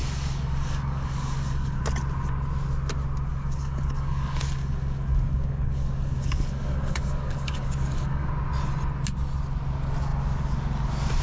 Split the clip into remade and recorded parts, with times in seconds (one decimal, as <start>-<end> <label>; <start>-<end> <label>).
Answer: 0.0-1.8 remade; 1.8-3.3 recorded; 3.3-8.3 remade; 8.3-11.2 recorded